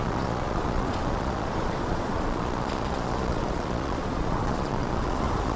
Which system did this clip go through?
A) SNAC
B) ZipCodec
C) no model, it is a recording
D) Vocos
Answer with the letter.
D